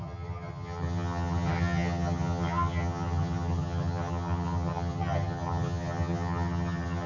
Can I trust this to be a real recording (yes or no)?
no